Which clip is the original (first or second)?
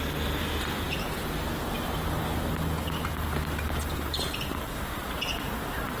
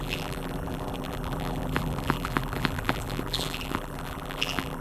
first